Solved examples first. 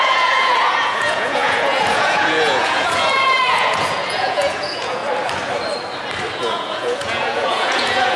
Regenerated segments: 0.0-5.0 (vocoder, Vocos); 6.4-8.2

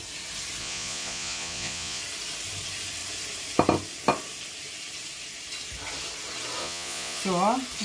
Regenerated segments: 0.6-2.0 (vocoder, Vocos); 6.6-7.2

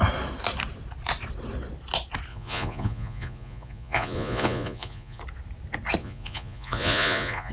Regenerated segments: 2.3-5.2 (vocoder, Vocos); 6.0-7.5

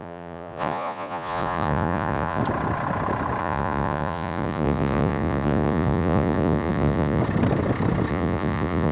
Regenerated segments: 0.0-2.4 (vocoder, Vocos); 3.4-7.2; 8.1-8.9